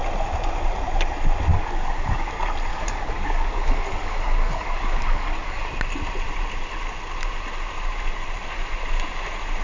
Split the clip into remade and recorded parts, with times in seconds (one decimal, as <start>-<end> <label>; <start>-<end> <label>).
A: 0.0-1.5 recorded; 1.5-2.3 remade; 2.3-2.7 recorded; 2.7-5.6 remade; 5.6-9.6 recorded